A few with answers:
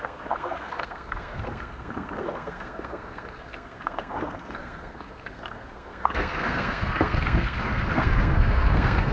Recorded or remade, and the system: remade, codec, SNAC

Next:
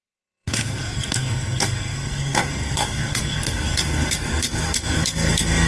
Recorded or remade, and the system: remade, codec, SNAC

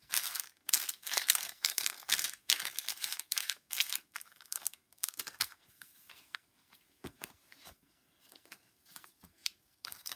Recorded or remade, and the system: remade, codec, SNAC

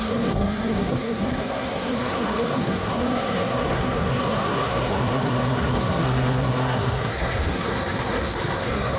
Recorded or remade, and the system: remade, codec, SNAC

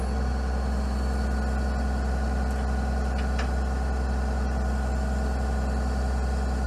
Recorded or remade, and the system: recorded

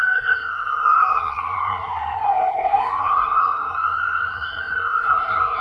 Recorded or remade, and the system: remade, codec, SNAC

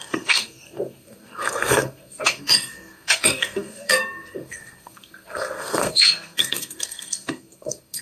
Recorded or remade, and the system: remade, codec, SNAC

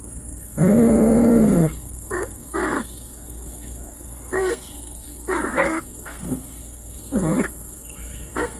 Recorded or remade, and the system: remade, codec, SNAC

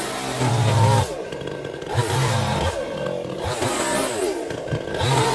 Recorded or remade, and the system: recorded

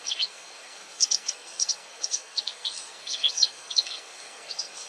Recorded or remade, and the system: remade, codec, SNAC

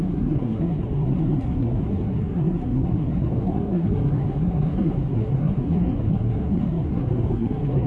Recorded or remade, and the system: remade, codec, SNAC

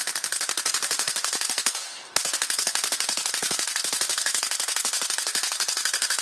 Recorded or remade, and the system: remade, codec, SNAC